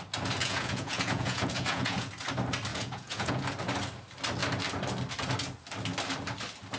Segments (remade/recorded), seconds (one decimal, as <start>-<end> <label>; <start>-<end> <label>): 0.0-0.4 recorded; 0.4-2.1 remade; 2.1-2.7 recorded; 2.7-3.4 remade; 3.4-6.8 recorded